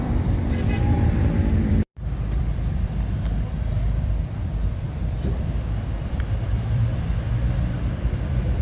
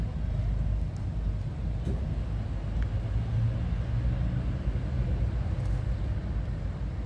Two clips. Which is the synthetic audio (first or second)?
first